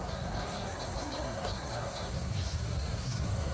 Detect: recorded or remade remade